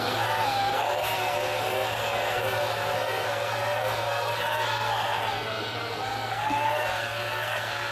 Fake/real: fake